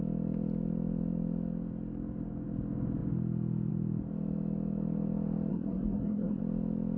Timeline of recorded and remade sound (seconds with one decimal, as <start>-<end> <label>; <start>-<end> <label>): 0.0-5.5 recorded; 5.5-6.4 remade; 6.4-7.0 recorded